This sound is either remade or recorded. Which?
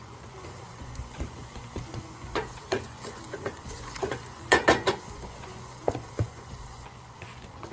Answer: remade